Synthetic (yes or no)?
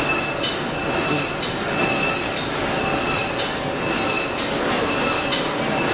no